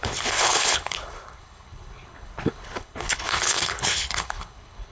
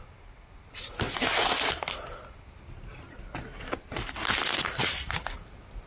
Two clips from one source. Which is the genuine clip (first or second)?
second